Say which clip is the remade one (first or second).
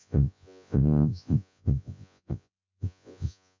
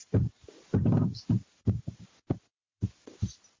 first